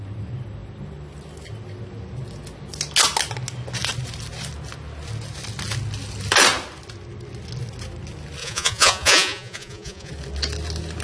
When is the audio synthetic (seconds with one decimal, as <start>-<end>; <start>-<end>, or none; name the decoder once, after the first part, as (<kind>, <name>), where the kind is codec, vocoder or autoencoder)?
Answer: 8.4-10.1 (vocoder, Vocos)